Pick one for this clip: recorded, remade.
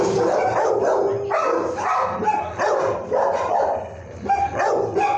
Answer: recorded